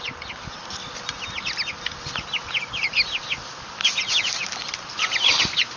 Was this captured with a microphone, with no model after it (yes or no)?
yes